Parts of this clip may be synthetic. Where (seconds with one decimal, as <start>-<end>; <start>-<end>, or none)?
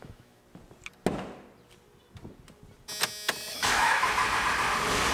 0.0-0.4; 3.5-4.2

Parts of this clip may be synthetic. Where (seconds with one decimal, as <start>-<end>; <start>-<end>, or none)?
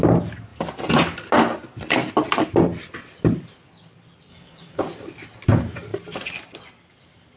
4.3-4.8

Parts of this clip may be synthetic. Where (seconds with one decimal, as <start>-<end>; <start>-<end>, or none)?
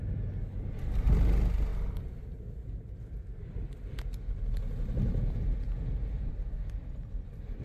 none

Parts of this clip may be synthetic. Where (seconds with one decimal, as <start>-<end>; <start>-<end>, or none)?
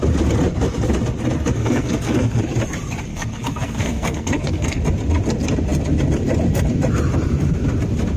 1.6-2.4; 3.1-4.8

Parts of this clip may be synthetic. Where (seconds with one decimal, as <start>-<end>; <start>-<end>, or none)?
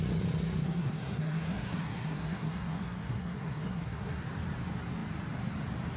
0.6-4.2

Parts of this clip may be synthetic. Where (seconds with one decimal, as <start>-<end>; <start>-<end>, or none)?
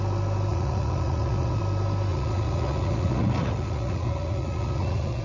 0.5-1.6; 2.1-5.2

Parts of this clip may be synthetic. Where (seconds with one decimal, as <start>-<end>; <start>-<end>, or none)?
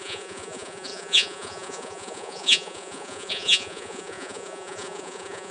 0.0-5.5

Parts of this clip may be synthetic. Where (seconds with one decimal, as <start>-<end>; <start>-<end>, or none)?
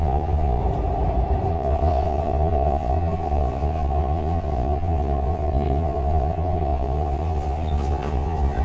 0.0-0.6; 1.5-8.6